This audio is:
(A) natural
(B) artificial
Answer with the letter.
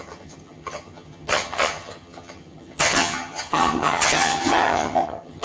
B